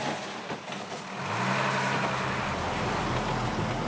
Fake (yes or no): no